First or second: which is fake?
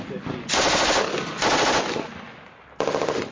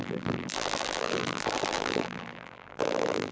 second